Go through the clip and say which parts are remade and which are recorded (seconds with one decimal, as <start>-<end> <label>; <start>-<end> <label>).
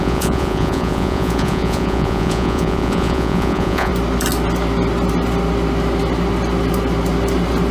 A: 0.0-3.9 remade; 3.9-7.7 recorded